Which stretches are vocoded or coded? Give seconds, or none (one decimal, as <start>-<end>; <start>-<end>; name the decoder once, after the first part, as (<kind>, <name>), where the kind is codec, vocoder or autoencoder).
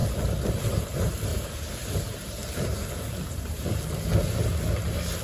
1.3-3.8 (vocoder, BigVGAN v2)